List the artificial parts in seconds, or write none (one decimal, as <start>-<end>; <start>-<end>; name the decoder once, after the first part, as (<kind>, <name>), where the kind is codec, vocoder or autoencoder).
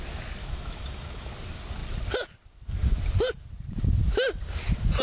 0.4-1.3 (autoencoder, DAC-VAE)